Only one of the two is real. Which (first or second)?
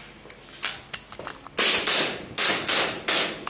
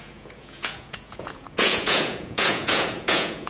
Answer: first